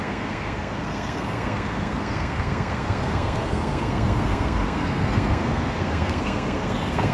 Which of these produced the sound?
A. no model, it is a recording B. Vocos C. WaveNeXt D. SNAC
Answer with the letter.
D